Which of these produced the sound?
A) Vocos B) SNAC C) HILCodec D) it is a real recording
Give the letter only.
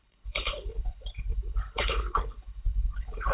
C